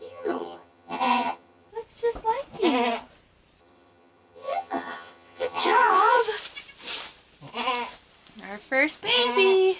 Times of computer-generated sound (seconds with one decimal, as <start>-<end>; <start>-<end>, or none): 0.0-1.7; 3.6-6.2